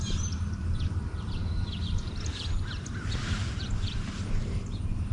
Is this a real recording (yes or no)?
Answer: no